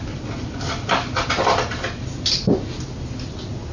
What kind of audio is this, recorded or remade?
recorded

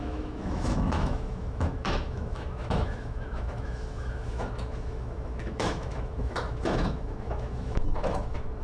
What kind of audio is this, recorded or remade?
remade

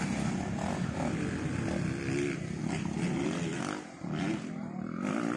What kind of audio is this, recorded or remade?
recorded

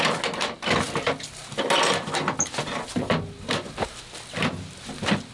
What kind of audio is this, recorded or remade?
recorded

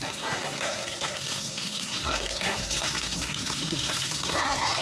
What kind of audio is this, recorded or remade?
remade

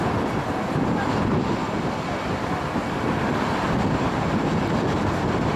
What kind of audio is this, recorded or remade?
recorded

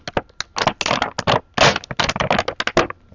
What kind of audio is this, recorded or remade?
recorded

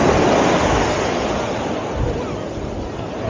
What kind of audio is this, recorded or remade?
recorded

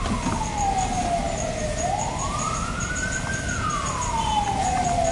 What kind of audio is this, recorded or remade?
recorded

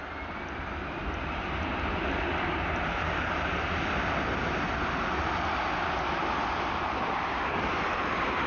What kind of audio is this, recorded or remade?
recorded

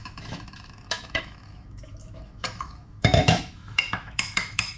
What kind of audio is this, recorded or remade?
remade